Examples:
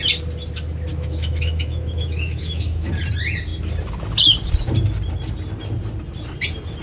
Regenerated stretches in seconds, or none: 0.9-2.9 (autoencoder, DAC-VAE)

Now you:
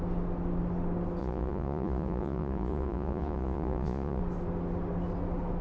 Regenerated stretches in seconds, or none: 1.2-4.2 (vocoder, Vocos)

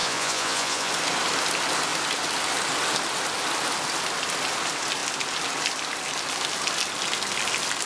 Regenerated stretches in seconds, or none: 0.0-0.9 (vocoder, Vocos)

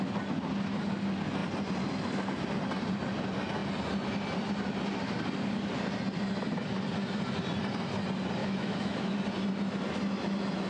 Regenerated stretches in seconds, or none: 8.4-9.2 (autoencoder, DAC-VAE)

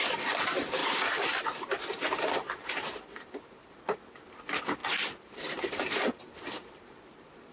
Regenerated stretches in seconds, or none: 0.0-0.8 (vocoder, BigVGAN v2); 3.3-7.5

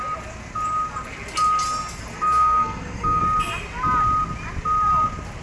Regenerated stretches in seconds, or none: 2.1-3.2 (codec, SNAC)